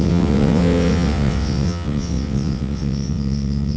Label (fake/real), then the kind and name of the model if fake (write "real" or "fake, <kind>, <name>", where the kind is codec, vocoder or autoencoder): fake, vocoder, WaveNeXt